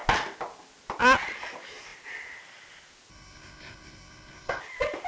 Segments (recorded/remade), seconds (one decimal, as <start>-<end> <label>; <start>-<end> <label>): 0.0-3.1 recorded; 3.1-4.6 remade; 4.6-5.1 recorded